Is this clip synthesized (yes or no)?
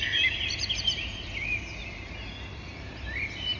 no